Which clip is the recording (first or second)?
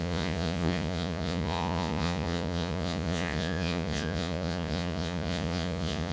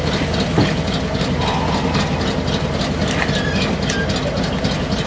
second